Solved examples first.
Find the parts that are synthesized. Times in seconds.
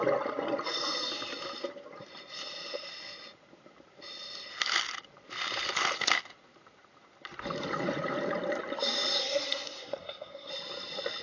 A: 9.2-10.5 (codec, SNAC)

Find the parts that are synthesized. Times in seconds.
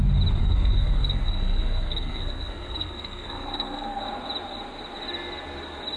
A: 0.4-4.0 (codec, SNAC)